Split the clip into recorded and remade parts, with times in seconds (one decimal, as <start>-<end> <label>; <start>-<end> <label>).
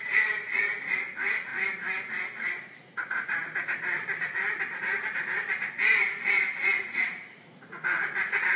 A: 0.0-1.5 remade; 1.5-2.1 recorded; 2.1-3.3 remade; 3.3-4.8 recorded; 4.8-8.6 remade